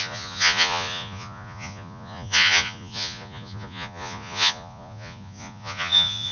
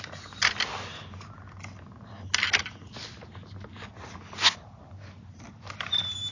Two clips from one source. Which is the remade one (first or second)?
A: first